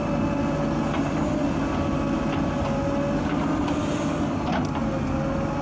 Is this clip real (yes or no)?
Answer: yes